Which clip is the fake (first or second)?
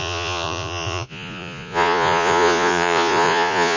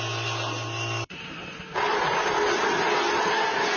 first